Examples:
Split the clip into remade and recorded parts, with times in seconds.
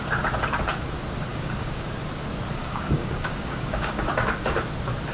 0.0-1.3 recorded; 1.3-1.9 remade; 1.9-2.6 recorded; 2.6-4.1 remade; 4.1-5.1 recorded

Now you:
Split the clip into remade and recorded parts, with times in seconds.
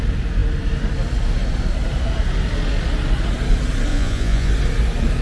0.0-3.9 recorded; 3.9-4.5 remade; 4.5-5.2 recorded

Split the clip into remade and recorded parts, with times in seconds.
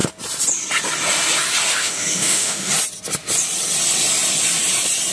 0.0-1.7 recorded; 1.7-2.7 remade; 2.7-5.1 recorded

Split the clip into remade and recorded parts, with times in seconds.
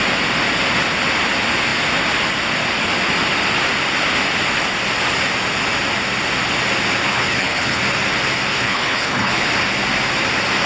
0.0-7.0 recorded; 7.0-7.8 remade; 7.8-8.5 recorded; 8.5-9.5 remade; 9.5-10.7 recorded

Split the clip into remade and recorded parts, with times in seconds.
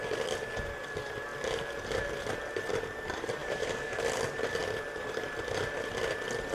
0.0-3.4 recorded; 3.4-4.0 remade; 4.0-6.5 recorded